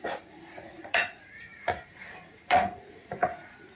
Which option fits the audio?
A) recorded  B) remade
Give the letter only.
B